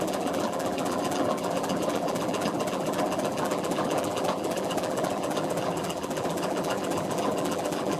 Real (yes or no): no